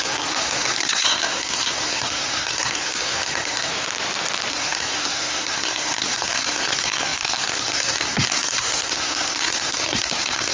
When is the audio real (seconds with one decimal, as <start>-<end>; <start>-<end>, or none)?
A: 3.7-4.5